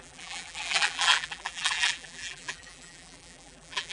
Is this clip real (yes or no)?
no